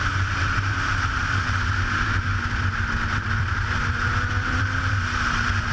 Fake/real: fake